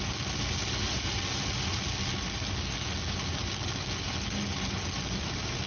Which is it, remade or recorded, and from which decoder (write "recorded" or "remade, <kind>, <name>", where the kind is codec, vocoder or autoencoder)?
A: recorded